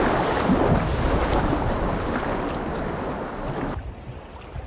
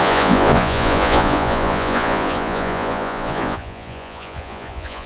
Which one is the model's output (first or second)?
second